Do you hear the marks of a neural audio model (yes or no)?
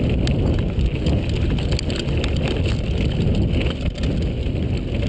no